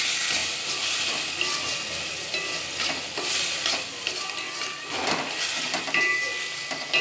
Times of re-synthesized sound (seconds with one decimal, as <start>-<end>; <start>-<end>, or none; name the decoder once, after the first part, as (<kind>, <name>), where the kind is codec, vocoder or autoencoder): none